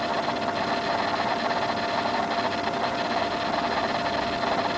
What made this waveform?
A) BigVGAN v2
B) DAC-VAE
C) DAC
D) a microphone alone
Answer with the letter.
D